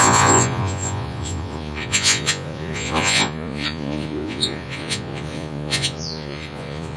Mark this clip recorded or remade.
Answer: remade